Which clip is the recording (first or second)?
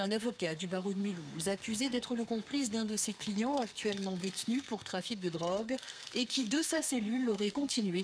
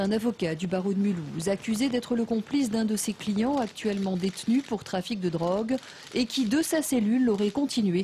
second